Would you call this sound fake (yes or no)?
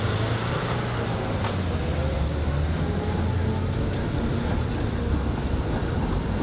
no